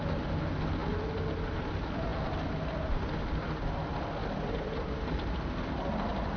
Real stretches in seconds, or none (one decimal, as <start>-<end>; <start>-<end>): 0.0-6.4